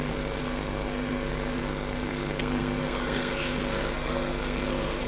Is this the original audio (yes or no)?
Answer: no